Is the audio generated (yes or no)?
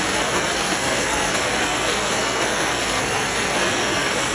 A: yes